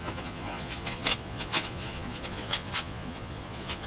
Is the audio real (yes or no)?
no